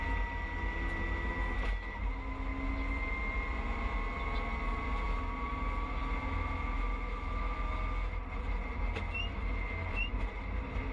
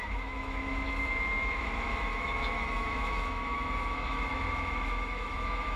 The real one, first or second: first